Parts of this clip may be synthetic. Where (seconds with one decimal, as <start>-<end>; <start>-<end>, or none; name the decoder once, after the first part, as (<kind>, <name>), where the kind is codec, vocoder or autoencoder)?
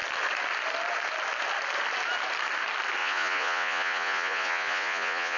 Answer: 3.0-5.4 (vocoder, Vocos)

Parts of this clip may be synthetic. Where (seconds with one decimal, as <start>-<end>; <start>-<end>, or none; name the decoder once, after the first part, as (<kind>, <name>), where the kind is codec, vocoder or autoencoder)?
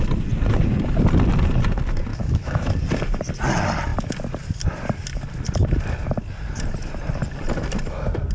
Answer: 2.1-2.7 (autoencoder, DAC-VAE)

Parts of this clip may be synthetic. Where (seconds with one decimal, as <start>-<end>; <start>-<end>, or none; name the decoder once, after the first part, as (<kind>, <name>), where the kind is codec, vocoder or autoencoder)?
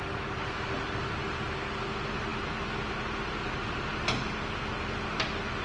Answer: none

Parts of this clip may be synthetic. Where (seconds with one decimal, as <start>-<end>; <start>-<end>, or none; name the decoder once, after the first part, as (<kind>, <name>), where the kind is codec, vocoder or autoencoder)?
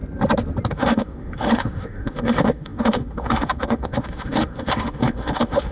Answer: 0.7-5.7 (autoencoder, DAC-VAE)